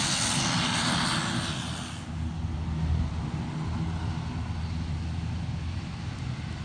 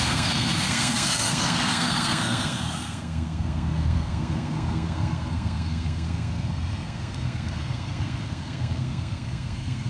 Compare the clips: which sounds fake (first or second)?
second